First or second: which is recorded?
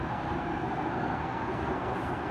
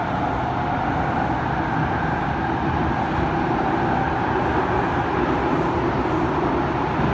second